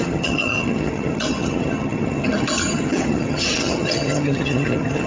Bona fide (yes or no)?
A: no